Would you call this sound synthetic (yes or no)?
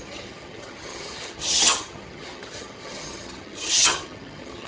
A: yes